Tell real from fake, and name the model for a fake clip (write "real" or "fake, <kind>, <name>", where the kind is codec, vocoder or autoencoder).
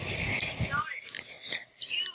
real